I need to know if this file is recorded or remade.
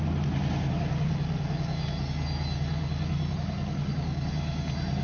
recorded